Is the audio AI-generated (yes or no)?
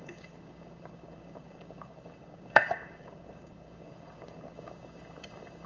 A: yes